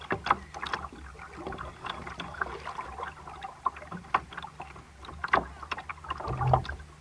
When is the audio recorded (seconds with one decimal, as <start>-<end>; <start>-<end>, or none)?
0.0-7.0